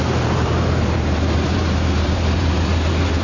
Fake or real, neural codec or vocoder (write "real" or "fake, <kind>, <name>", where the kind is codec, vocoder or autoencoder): fake, vocoder, BigVGAN v2